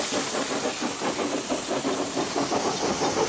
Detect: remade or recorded recorded